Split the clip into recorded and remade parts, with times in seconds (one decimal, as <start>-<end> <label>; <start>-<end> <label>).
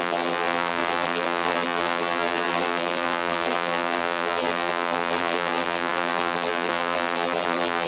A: 0.0-7.9 remade